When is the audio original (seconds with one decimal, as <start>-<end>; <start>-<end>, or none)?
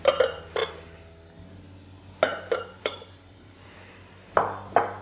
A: 0.6-2.8